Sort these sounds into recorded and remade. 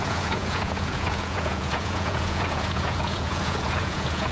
remade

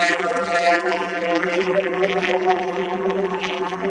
remade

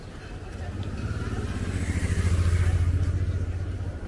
recorded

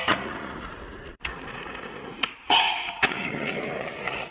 remade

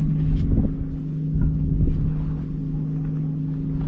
recorded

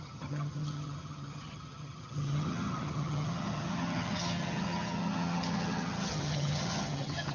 remade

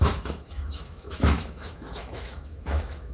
remade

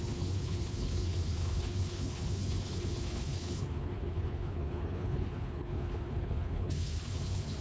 remade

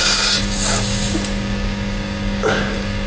remade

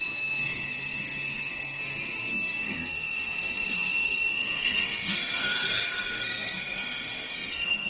remade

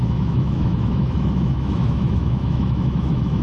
remade